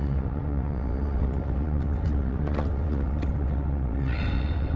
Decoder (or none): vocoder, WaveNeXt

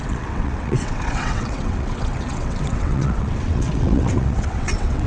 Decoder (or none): vocoder, WaveNeXt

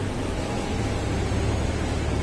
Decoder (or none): none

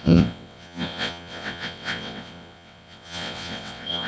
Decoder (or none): vocoder, WaveNeXt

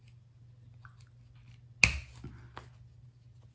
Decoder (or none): none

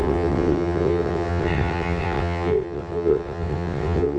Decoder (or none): vocoder, WaveNeXt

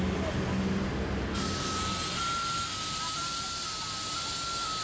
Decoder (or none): none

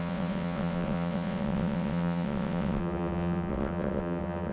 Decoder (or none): vocoder, WaveNeXt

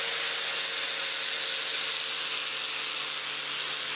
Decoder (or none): none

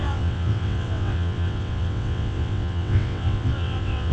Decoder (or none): vocoder, WaveNeXt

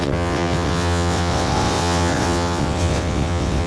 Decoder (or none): vocoder, WaveNeXt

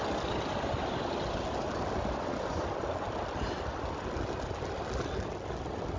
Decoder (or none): none